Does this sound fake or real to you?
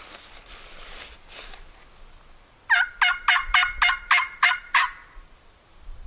real